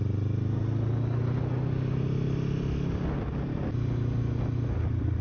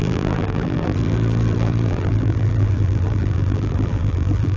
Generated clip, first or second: second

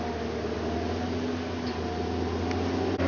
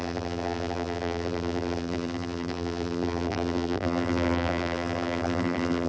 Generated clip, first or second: second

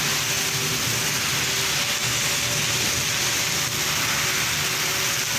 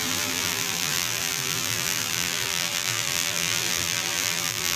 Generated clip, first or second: second